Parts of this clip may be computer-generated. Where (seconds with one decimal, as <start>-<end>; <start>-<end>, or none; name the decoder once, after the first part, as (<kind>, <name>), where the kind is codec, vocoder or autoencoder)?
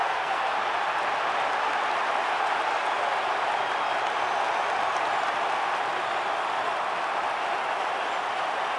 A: 0.0-0.6 (codec, SNAC)